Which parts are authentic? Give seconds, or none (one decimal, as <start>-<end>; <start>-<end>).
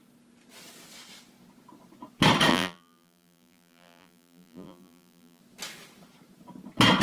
0.0-2.5; 5.4-7.0